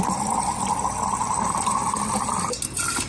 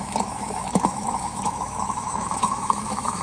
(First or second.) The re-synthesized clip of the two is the second